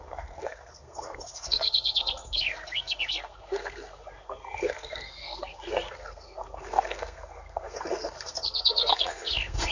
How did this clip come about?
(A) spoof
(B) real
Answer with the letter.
A